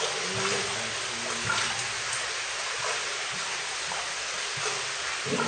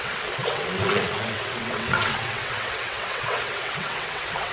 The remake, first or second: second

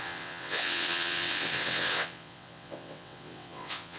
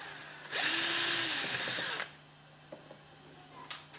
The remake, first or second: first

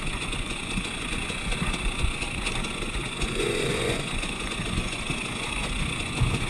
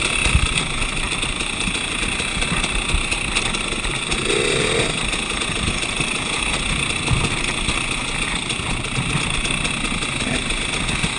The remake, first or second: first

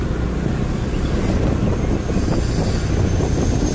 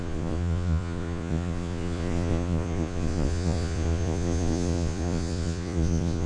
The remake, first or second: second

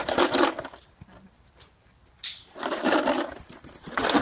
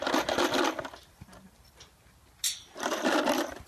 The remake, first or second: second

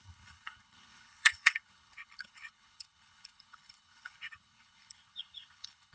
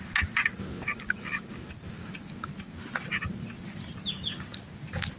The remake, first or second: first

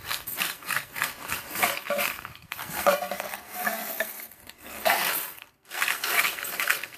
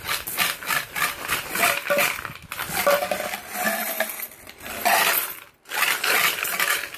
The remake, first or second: first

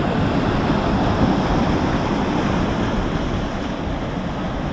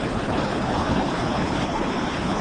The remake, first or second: second